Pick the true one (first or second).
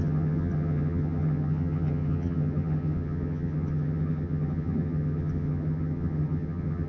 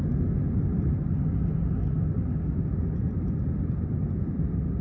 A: second